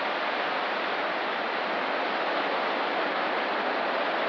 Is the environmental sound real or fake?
real